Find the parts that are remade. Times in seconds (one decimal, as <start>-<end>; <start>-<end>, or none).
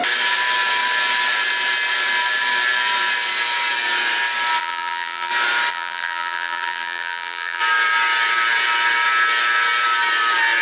4.6-5.3; 5.7-7.6